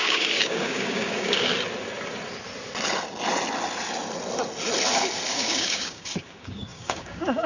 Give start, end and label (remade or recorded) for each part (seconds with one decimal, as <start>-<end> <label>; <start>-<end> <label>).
0.0-1.5 remade; 1.5-5.3 recorded; 5.3-7.5 remade